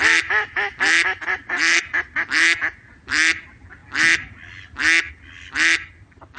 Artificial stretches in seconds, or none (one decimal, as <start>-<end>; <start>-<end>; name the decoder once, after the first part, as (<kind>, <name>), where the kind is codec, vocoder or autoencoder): none